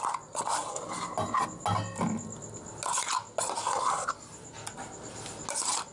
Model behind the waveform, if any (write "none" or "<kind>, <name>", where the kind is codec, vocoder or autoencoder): none